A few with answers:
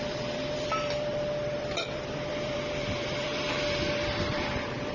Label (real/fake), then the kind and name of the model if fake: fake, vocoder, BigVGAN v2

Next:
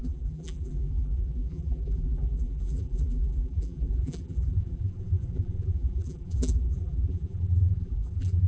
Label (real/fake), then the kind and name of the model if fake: fake, vocoder, BigVGAN v2